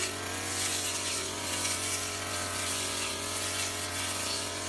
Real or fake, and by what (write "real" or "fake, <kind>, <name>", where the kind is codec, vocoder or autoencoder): fake, vocoder, Vocos